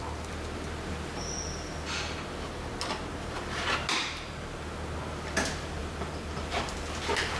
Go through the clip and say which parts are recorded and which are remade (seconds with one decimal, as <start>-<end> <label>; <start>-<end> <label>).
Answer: 0.0-5.8 recorded; 5.8-6.6 remade; 6.6-7.4 recorded